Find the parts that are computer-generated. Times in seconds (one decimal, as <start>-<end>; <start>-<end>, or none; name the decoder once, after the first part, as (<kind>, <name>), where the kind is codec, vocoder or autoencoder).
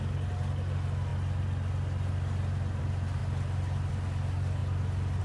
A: none